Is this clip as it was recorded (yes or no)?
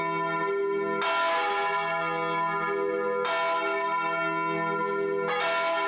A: yes